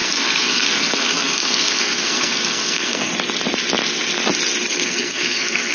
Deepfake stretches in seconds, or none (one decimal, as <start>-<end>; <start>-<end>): 0.0-3.1; 4.7-5.7

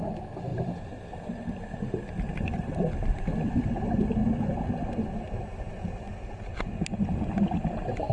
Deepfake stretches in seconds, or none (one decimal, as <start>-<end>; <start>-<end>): 0.5-3.2

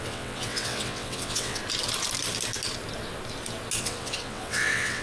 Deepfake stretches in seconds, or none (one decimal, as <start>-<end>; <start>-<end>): 0.0-1.6; 3.8-5.0

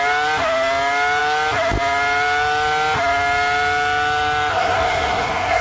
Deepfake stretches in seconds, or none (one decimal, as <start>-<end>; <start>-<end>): 4.5-5.6

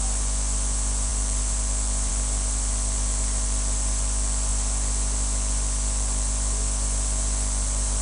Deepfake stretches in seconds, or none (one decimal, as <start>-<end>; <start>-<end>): 0.0-8.0

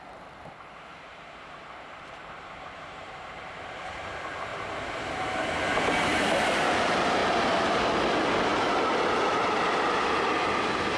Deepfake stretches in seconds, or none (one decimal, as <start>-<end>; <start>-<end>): 0.9-4.1; 4.5-5.2